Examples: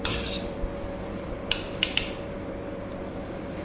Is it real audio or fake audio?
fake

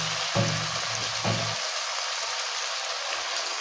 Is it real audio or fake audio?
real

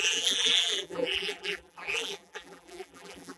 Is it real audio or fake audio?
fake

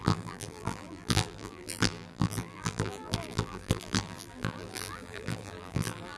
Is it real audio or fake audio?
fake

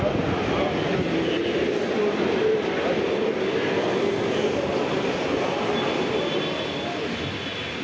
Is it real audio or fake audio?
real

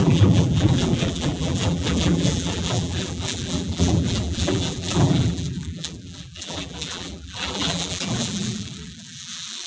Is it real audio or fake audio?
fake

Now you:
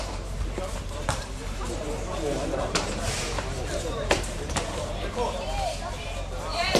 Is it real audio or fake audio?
fake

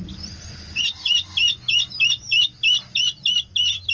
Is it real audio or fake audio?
fake